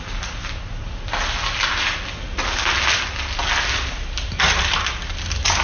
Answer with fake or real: real